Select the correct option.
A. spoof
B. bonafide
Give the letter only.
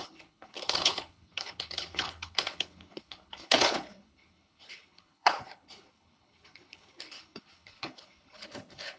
A